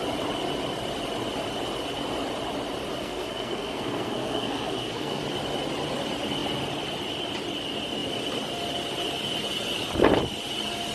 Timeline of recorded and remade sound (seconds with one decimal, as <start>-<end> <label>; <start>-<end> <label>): 0.0-3.0 recorded; 3.0-5.2 remade; 5.2-10.9 recorded